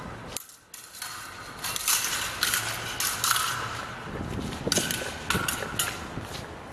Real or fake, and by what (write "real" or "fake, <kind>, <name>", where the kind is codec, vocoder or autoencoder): real